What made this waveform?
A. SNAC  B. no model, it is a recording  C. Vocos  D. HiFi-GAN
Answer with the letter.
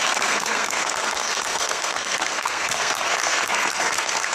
A